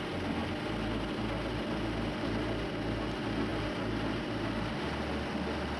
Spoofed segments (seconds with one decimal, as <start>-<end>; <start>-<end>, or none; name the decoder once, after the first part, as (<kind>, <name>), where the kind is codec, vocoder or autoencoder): none